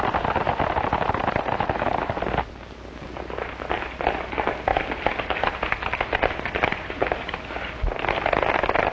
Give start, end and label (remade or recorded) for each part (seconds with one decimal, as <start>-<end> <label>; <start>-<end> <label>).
0.0-2.0 recorded; 2.0-2.5 remade; 2.5-4.7 recorded; 4.7-7.8 remade; 7.8-8.9 recorded